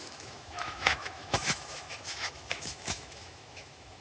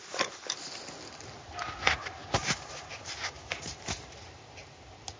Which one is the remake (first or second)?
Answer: first